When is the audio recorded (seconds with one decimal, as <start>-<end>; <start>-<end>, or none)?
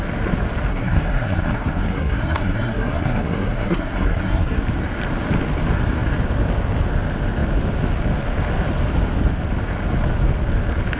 0.0-0.7; 4.6-11.0